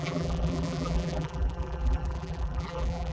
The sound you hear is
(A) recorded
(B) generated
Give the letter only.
B